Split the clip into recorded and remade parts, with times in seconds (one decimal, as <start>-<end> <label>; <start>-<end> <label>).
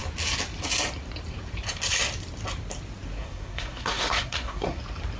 0.0-3.2 recorded; 3.2-4.8 remade; 4.8-5.2 recorded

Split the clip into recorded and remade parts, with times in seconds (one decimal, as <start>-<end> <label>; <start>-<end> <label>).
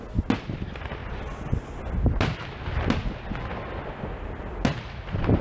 0.0-5.4 recorded